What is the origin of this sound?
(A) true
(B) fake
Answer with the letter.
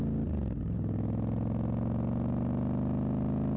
A